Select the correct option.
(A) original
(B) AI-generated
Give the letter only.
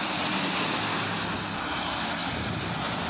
A